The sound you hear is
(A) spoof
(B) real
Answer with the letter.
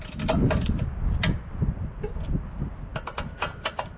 B